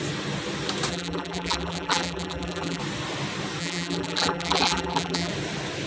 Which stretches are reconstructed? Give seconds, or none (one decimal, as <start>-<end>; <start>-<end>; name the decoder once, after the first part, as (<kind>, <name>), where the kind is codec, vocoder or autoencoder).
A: 0.9-2.8 (vocoder, BigVGAN v2); 3.6-5.3